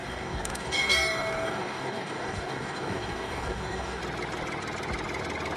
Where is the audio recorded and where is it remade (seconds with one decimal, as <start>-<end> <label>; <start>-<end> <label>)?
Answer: 0.0-4.0 remade; 4.0-5.6 recorded